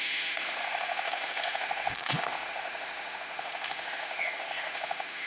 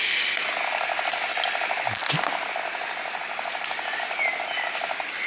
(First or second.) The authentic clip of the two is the second